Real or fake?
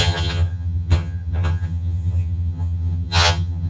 fake